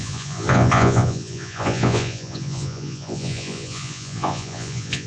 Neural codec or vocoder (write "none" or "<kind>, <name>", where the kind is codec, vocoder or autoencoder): vocoder, Vocos